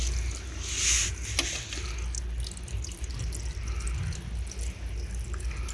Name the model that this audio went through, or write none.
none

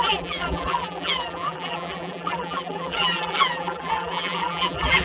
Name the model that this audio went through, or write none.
vocoder, BigVGAN v2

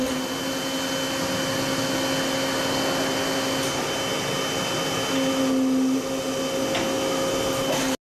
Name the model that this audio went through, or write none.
none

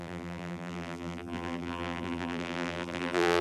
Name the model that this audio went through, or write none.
vocoder, BigVGAN v2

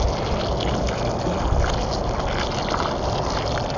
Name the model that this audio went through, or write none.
none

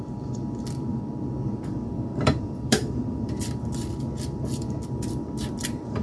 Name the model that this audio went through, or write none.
vocoder, BigVGAN v2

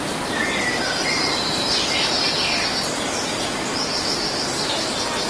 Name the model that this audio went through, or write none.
none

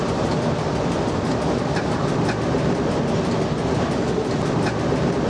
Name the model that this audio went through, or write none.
none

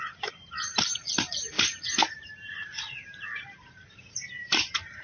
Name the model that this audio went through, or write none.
vocoder, BigVGAN v2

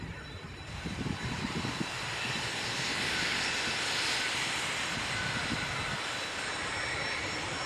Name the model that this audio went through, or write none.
none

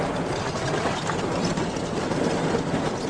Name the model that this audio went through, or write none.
none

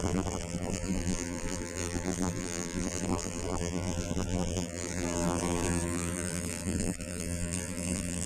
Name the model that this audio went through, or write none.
vocoder, BigVGAN v2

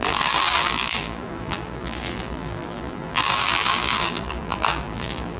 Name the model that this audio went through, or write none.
vocoder, BigVGAN v2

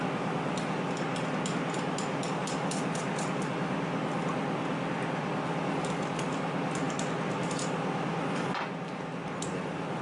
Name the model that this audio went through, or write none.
none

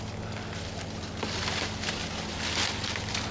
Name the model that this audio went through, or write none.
none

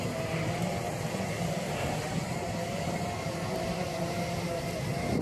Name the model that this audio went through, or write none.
vocoder, BigVGAN v2